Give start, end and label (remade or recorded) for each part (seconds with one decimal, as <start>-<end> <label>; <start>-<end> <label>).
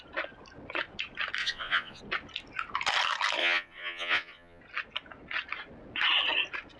0.0-1.4 recorded; 1.4-2.0 remade; 2.0-3.4 recorded; 3.4-4.6 remade; 4.6-6.8 recorded